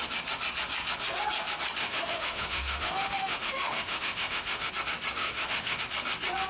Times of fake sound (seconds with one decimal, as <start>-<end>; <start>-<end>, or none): 1.8-4.7; 5.2-5.8